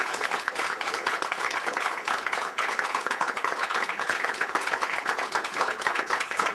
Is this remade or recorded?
remade